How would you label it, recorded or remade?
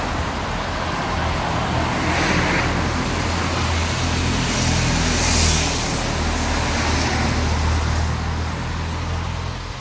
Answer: recorded